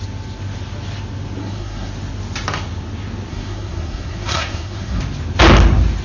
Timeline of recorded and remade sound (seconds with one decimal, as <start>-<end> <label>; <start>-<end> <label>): 0.0-1.4 recorded; 1.4-1.9 remade; 1.9-3.3 recorded; 3.3-5.0 remade; 5.0-6.0 recorded